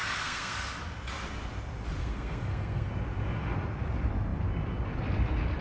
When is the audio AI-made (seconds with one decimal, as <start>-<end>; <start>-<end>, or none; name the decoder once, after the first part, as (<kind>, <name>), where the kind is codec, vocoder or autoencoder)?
0.0-0.6 (codec, SNAC); 2.0-2.9